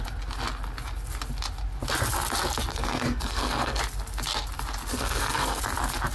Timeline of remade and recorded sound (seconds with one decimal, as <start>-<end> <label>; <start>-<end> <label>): 0.0-2.7 recorded; 2.7-3.8 remade; 3.8-4.9 recorded; 4.9-5.6 remade; 5.6-6.1 recorded